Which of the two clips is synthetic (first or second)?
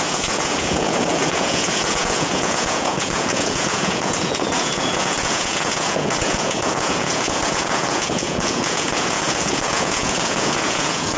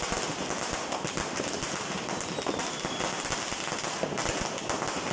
first